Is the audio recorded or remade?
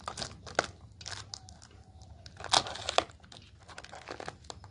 recorded